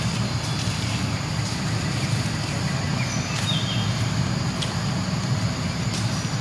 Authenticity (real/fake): real